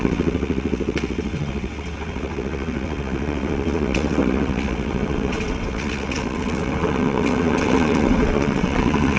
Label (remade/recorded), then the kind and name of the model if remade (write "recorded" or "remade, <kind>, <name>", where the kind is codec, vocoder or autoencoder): remade, vocoder, WaveNeXt